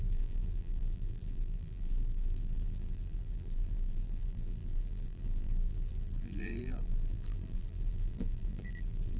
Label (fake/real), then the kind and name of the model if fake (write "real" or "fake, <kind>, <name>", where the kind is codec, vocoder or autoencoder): fake, vocoder, BigVGAN v2